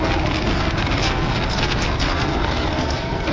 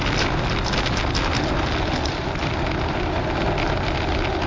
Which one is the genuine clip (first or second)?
second